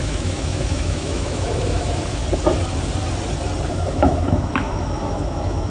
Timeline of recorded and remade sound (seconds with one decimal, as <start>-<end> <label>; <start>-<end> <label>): 0.0-2.2 remade; 2.2-3.7 recorded; 3.7-5.7 remade